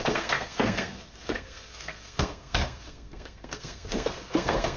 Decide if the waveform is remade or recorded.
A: remade